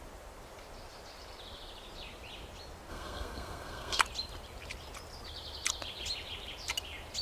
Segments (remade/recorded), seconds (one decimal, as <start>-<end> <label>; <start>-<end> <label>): 0.0-2.9 recorded; 2.9-4.0 remade; 4.0-7.2 recorded